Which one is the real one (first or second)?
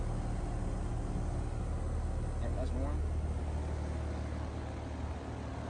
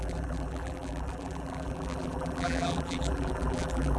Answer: first